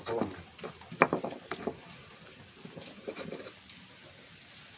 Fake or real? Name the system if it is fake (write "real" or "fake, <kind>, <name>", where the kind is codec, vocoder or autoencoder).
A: real